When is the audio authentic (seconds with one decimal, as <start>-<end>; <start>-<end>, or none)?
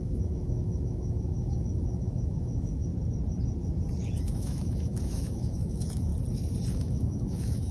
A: 2.9-4.2; 6.1-6.7